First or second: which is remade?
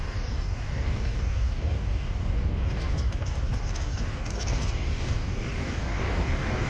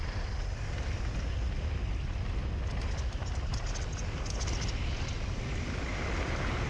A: first